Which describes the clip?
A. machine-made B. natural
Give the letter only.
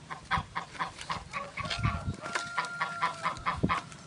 B